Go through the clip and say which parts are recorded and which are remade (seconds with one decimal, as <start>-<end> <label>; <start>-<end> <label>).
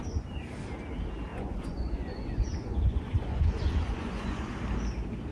0.0-1.3 recorded; 1.3-4.5 remade; 4.5-5.3 recorded